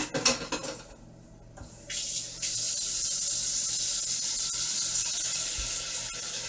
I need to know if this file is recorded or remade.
recorded